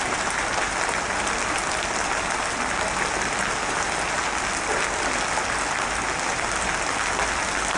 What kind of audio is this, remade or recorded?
recorded